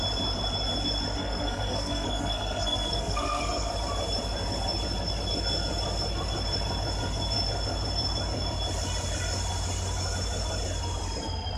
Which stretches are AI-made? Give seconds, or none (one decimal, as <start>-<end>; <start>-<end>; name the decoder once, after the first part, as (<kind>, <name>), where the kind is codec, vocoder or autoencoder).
1.2-3.7 (codec, SNAC)